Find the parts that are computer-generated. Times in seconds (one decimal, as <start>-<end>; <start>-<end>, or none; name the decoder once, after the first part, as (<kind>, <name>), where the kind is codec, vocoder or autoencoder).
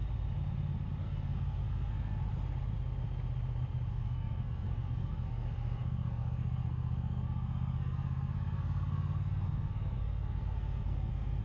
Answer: 1.0-2.2 (codec, SNAC); 3.9-11.4